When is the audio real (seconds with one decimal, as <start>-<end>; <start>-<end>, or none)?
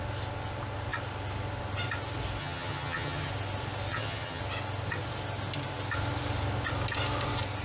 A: 0.0-2.4; 3.3-3.9; 4.4-7.6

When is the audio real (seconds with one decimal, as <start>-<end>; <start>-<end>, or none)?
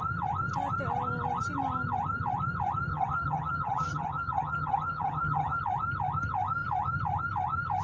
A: 0.0-2.9; 5.6-7.8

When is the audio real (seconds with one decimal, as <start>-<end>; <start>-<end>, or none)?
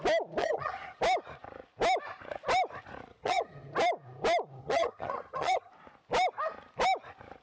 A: 0.0-0.4; 1.0-3.1; 3.7-4.6; 5.7-7.4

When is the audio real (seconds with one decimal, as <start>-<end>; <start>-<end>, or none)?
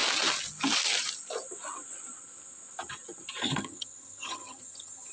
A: 0.0-3.4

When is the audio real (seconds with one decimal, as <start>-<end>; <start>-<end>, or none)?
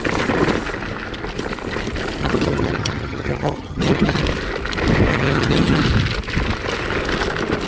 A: 0.0-2.2; 4.2-5.1; 5.8-7.7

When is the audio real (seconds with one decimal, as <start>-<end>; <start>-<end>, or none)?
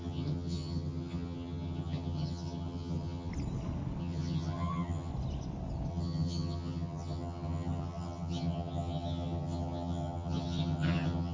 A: 3.3-4.0; 5.1-5.9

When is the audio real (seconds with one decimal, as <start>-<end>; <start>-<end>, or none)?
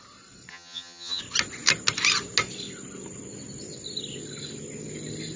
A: 0.0-0.5; 1.2-5.4